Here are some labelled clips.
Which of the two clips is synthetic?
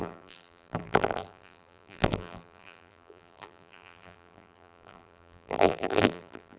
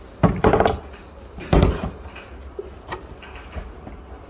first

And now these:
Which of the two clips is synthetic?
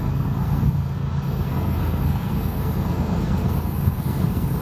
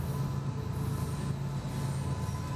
first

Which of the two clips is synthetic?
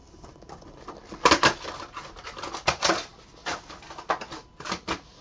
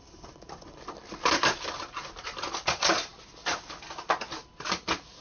second